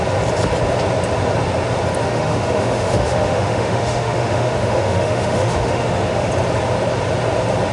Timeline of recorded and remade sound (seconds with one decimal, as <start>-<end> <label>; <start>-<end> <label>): 0.0-2.0 recorded; 2.0-6.3 remade; 6.3-7.7 recorded